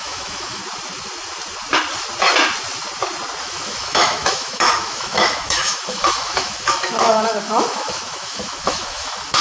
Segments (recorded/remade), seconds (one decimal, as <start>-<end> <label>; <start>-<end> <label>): 0.0-0.6 remade; 0.6-3.4 recorded; 3.4-9.4 remade